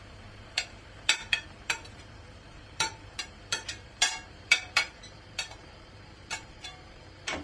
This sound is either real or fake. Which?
fake